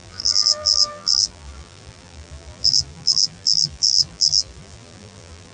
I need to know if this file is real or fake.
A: fake